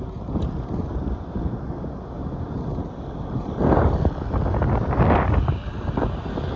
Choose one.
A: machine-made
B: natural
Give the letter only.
B